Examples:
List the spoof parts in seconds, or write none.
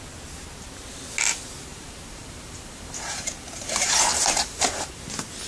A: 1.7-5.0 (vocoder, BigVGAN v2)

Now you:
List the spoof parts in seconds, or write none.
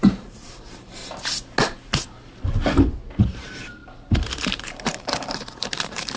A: 0.0-1.0 (vocoder, BigVGAN v2); 3.4-6.2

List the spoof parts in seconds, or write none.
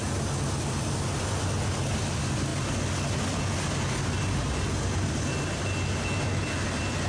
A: none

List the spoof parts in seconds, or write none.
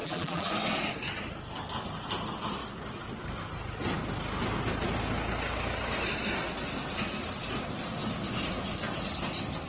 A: 0.0-0.5 (vocoder, BigVGAN v2)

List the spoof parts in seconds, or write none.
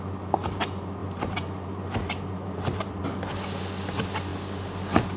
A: 1.0-3.0 (vocoder, BigVGAN v2)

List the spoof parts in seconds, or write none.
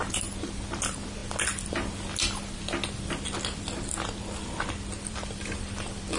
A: 0.0-1.2 (vocoder, BigVGAN v2); 4.9-6.2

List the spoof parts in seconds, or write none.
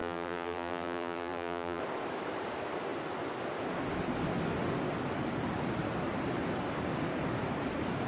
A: 0.0-1.8 (vocoder, BigVGAN v2)